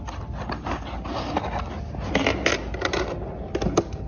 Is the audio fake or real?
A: real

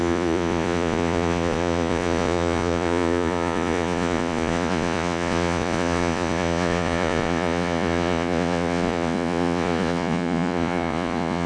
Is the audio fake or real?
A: fake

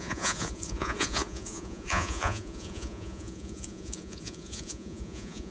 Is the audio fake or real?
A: fake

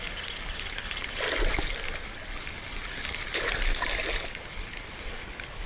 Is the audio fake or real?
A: real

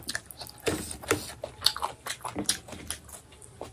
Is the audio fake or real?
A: real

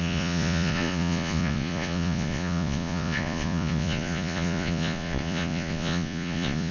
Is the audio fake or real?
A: fake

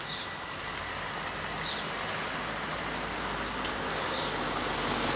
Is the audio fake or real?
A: real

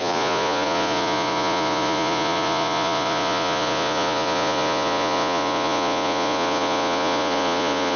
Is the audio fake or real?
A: fake